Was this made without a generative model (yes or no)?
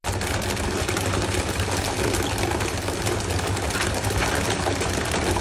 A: no